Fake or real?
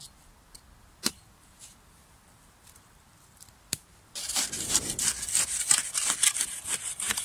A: fake